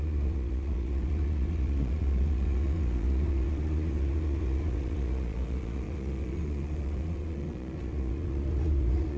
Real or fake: fake